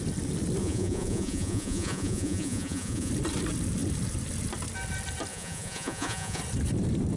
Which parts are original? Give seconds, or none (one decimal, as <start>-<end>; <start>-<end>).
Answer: 0.0-0.6; 3.1-5.3; 6.4-7.2